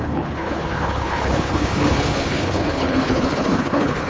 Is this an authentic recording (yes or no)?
no